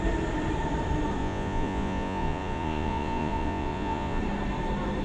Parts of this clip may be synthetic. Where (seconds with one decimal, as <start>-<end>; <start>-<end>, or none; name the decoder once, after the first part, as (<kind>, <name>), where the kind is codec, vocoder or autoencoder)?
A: 1.2-4.2 (vocoder, Vocos)